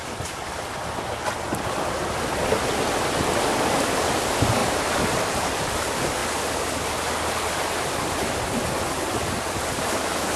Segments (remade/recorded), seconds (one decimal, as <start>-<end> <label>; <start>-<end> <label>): 0.0-4.6 recorded; 4.6-5.5 remade; 5.5-10.4 recorded